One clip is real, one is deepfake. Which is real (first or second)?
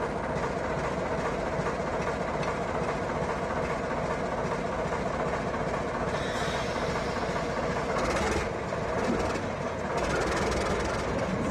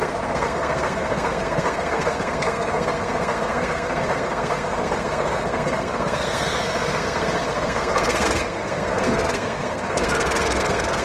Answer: first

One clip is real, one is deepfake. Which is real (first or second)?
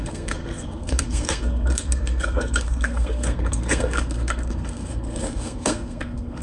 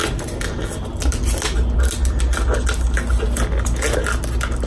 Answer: second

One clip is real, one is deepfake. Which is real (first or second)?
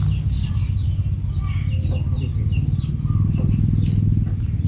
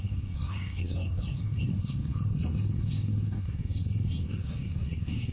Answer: first